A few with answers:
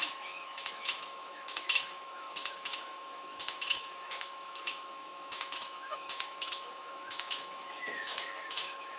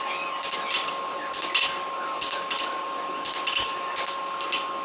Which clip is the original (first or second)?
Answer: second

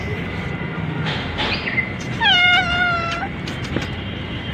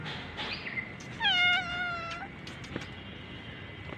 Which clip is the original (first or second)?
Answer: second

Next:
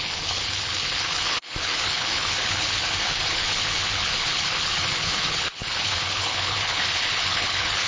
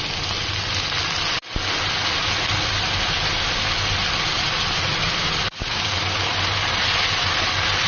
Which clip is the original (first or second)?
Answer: second